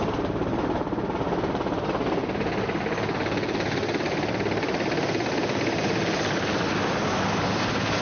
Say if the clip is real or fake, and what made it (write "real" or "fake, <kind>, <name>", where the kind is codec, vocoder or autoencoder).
real